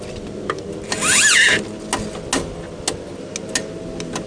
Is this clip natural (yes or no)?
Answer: yes